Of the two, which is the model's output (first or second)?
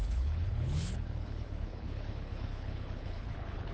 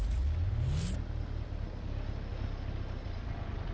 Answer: first